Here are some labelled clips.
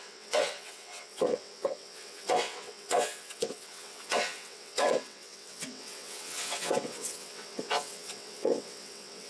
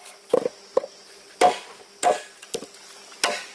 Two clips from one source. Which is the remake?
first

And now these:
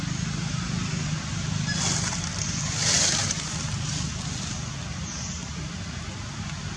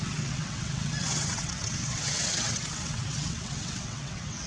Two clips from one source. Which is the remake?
second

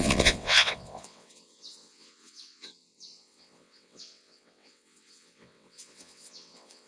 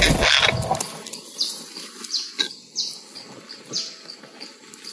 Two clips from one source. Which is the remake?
first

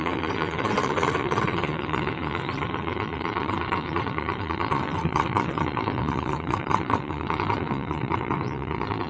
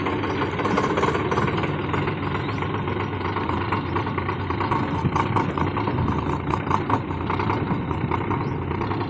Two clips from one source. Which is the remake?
first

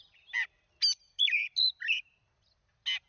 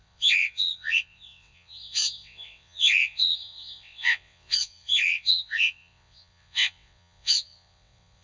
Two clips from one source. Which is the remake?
second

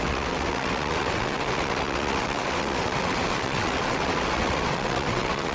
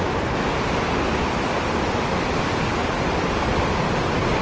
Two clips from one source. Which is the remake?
first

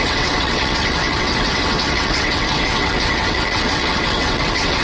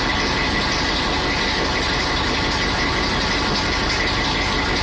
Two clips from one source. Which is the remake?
first